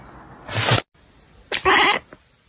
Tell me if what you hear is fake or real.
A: real